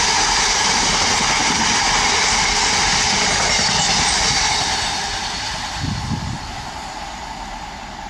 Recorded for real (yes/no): yes